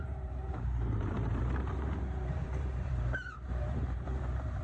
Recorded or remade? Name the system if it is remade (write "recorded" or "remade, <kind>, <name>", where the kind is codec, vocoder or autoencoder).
remade, vocoder, BigVGAN v2